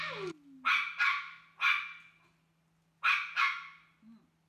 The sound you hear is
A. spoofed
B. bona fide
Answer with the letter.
B